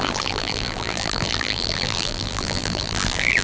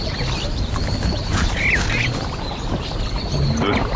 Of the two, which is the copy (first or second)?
first